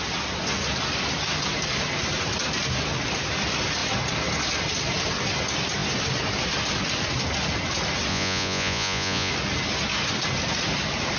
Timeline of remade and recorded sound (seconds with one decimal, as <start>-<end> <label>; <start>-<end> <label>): 0.0-8.1 recorded; 8.1-9.3 remade; 9.3-11.2 recorded